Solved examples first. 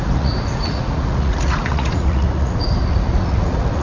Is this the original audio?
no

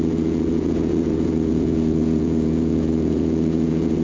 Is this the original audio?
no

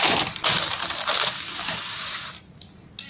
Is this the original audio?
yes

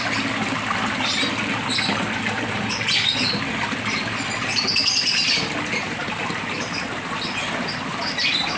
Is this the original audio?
yes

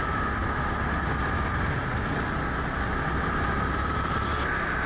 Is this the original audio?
yes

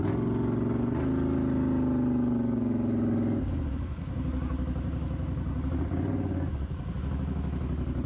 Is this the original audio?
yes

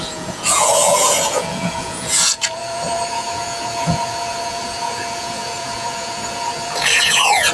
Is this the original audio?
no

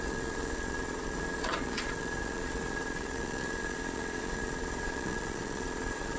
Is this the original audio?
no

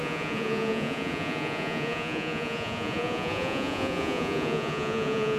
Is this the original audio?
no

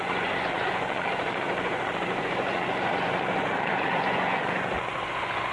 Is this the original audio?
no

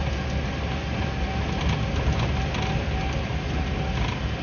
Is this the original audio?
yes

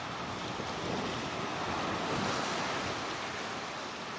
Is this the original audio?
yes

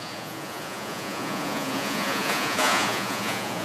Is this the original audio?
no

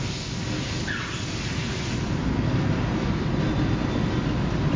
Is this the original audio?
yes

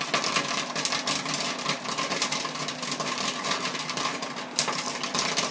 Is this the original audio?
yes